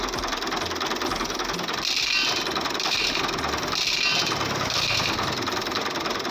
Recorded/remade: recorded